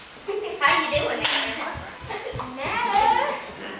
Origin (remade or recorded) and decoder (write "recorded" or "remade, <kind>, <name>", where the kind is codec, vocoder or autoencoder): recorded